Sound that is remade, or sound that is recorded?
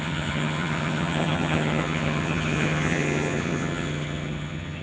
remade